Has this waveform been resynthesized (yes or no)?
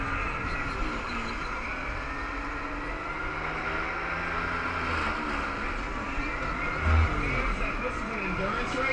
no